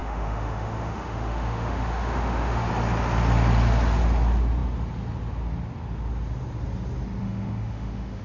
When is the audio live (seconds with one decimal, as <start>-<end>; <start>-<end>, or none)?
2.7-7.2